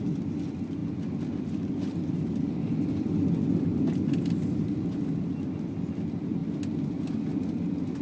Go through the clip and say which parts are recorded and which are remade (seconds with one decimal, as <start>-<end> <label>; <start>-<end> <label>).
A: 0.0-8.0 recorded